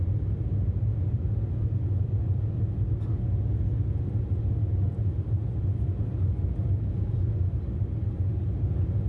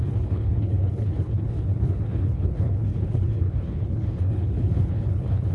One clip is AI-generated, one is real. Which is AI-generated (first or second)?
second